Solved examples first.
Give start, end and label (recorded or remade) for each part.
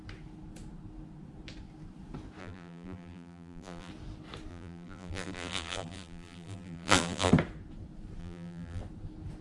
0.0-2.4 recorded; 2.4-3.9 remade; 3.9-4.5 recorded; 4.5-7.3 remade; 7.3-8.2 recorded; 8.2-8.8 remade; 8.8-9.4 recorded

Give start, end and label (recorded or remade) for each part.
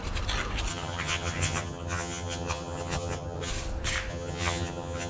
0.0-0.7 recorded; 0.7-3.5 remade; 3.5-4.1 recorded; 4.1-5.1 remade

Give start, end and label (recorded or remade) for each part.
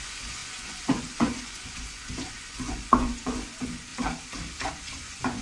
0.0-3.9 remade; 3.9-4.7 recorded; 4.7-5.4 remade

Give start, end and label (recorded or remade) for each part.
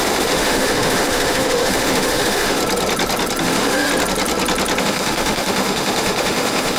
0.0-2.6 remade; 2.6-3.4 recorded; 3.4-3.9 remade; 3.9-4.8 recorded; 4.8-6.8 remade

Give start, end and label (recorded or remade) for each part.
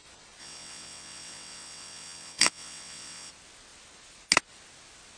0.0-0.4 recorded; 0.4-3.3 remade; 3.3-5.2 recorded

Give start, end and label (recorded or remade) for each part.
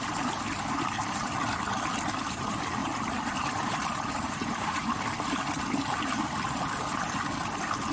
0.0-2.8 recorded; 2.8-5.0 remade; 5.0-7.9 recorded